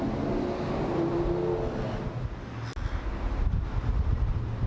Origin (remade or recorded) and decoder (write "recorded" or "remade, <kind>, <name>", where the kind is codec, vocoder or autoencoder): recorded